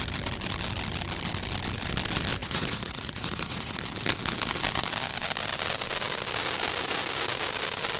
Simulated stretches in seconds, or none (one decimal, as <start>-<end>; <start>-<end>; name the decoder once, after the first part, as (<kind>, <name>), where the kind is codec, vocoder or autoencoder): 2.4-3.8 (vocoder, Vocos)